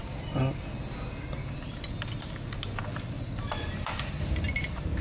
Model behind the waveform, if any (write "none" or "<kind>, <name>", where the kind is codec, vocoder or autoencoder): none